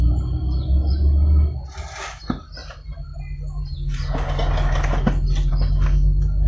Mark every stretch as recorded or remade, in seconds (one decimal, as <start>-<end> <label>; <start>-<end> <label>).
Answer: 0.0-6.5 recorded